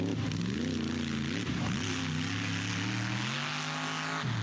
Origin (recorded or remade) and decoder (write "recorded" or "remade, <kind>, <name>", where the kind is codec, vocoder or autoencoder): recorded